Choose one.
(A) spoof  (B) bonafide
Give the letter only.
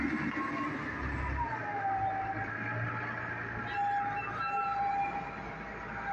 B